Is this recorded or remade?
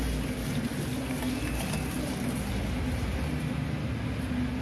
recorded